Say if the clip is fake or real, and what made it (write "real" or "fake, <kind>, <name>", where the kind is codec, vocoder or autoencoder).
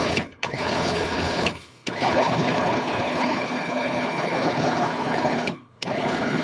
fake, codec, HILCodec